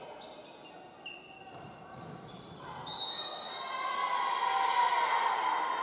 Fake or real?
real